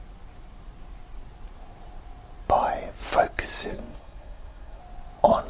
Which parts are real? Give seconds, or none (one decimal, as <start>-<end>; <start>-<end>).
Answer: 0.0-3.7; 4.8-5.5